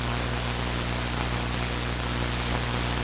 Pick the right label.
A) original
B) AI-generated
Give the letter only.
A